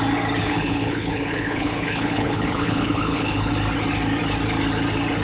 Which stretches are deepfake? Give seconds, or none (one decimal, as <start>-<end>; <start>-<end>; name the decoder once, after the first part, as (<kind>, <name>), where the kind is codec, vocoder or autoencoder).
0.4-3.5 (codec, HILCodec)